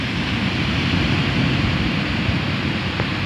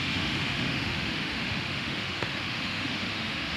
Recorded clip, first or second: first